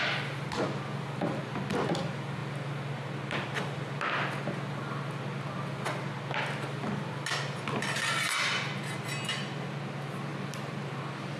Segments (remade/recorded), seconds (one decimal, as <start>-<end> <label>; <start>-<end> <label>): 0.0-11.4 recorded